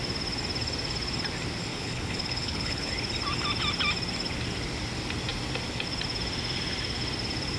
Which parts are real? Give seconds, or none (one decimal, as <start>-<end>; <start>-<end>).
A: 0.0-1.7; 2.9-7.6